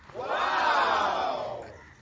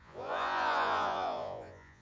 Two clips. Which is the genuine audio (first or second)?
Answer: first